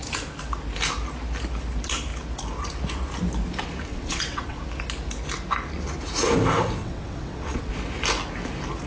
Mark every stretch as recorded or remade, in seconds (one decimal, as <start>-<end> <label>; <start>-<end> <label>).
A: 0.0-3.9 recorded; 3.9-4.6 remade; 4.6-6.8 recorded; 6.8-7.7 remade; 7.7-8.9 recorded